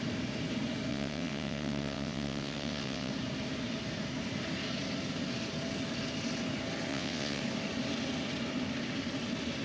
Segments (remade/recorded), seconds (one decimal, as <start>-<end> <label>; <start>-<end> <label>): 0.0-0.9 recorded; 0.9-3.1 remade; 3.1-6.9 recorded; 6.9-7.4 remade; 7.4-9.6 recorded